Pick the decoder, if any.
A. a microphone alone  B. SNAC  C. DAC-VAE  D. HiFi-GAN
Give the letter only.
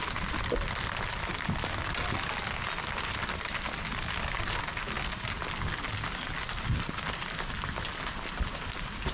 A